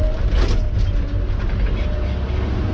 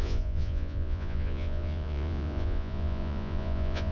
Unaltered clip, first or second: first